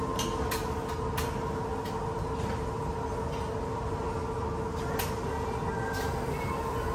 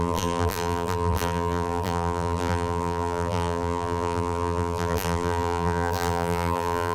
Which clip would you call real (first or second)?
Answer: first